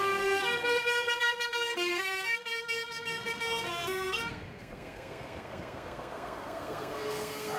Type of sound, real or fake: fake